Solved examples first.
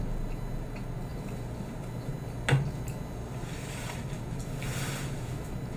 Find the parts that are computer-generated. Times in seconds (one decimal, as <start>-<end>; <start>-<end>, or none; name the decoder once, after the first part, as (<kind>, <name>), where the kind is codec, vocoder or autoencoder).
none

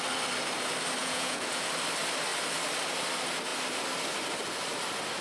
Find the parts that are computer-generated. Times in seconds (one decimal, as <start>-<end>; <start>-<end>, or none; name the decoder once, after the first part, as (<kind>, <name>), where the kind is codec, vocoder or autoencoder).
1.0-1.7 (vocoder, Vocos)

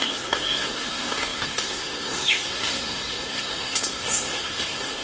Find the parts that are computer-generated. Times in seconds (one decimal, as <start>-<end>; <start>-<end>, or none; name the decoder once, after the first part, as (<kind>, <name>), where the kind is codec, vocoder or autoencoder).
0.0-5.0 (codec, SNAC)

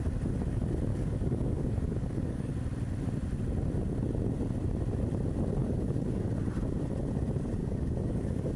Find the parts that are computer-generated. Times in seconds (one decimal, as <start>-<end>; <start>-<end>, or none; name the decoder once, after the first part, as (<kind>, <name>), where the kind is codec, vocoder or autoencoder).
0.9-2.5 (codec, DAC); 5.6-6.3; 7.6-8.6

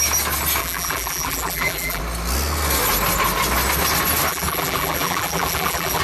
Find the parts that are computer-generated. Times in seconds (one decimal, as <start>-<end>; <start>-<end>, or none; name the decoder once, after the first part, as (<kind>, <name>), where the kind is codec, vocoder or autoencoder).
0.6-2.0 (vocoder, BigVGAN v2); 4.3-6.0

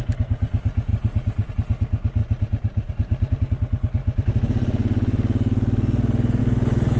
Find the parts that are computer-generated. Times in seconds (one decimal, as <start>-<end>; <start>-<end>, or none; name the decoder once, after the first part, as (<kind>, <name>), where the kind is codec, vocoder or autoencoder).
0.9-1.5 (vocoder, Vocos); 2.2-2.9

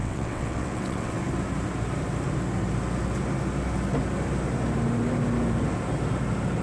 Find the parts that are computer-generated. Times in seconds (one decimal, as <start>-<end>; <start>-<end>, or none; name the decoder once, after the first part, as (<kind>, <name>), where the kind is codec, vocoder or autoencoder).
0.0-1.2 (vocoder, WaveNeXt)